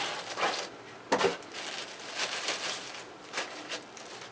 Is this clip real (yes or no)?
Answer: yes